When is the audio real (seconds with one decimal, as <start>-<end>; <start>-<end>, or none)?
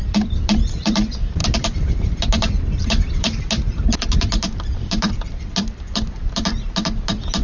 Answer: none